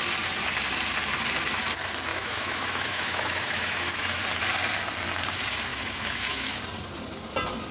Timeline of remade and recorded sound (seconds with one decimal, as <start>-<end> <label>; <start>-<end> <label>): 0.0-2.1 recorded; 2.1-4.2 remade; 4.2-5.7 recorded; 5.7-6.6 remade; 6.6-7.7 recorded